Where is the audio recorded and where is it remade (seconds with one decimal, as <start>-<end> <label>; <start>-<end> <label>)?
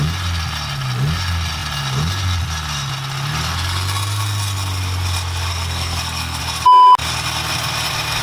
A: 0.0-5.5 recorded; 5.5-6.4 remade; 6.4-8.2 recorded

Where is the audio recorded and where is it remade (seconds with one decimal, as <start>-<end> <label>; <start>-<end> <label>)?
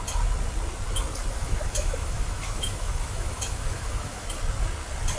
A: 0.0-1.3 recorded; 1.3-4.4 remade; 4.4-5.2 recorded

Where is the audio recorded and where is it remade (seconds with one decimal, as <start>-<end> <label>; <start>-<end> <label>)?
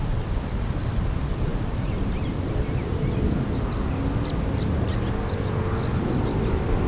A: 0.0-6.9 recorded